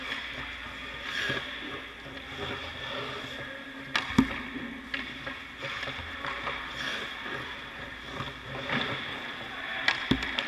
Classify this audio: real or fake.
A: real